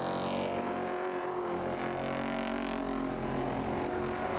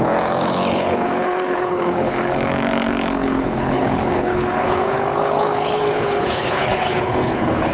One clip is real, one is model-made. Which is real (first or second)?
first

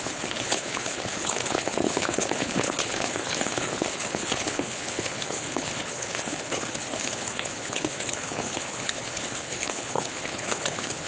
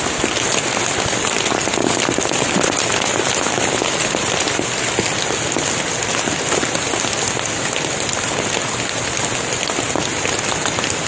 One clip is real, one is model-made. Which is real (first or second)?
second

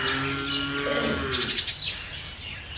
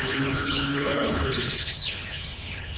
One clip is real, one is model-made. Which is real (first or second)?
first